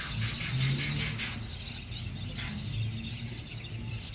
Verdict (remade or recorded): recorded